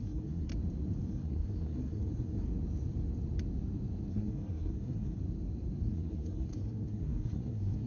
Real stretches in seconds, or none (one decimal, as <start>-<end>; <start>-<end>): 0.5-1.1; 2.5-4.1; 5.2-5.8